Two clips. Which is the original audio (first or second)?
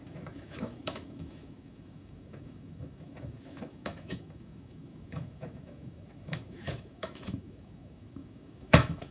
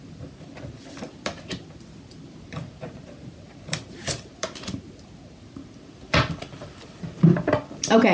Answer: second